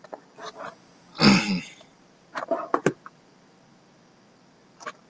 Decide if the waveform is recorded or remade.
recorded